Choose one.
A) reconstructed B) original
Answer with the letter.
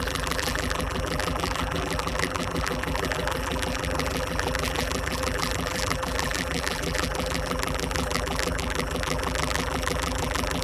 A